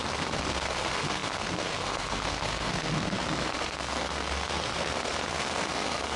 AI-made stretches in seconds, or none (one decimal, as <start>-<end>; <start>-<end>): 0.0-6.2